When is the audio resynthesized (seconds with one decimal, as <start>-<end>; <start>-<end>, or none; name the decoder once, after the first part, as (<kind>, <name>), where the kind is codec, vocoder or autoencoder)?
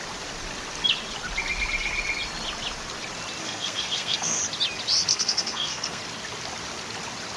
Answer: 3.4-4.4 (codec, SNAC); 5.1-6.0